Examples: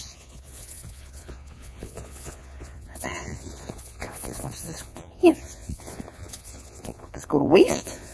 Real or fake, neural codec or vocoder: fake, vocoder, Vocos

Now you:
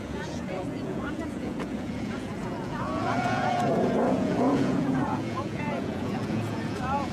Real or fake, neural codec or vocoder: fake, vocoder, Vocos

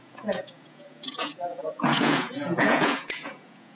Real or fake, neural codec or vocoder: fake, vocoder, Vocos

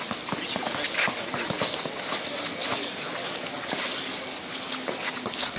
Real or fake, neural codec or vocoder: real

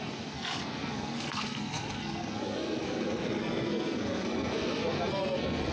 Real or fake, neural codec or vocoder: fake, codec, SNAC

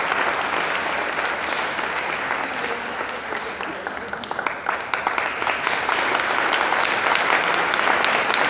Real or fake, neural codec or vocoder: real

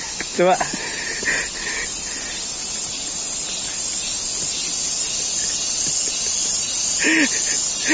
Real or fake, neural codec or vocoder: real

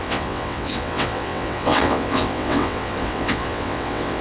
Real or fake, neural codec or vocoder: fake, vocoder, WaveNeXt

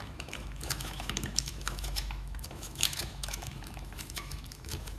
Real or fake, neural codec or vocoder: fake, autoencoder, DAC-VAE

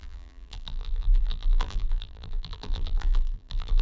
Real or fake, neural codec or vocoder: fake, vocoder, BigVGAN v2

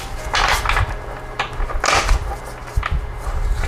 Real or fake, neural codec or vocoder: real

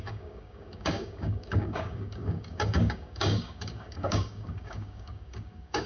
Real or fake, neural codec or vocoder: fake, codec, DAC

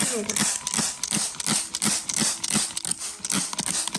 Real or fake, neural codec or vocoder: real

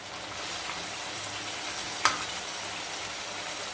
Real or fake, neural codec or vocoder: real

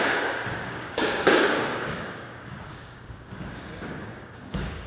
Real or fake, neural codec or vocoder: fake, codec, DAC